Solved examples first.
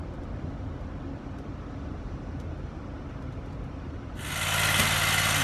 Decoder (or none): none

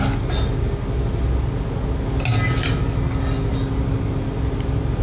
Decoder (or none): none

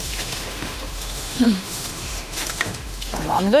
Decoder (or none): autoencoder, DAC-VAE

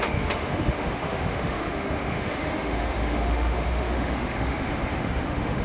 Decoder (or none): autoencoder, DAC-VAE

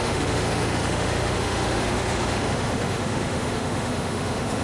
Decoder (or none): autoencoder, DAC-VAE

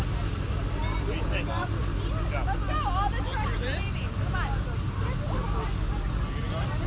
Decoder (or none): none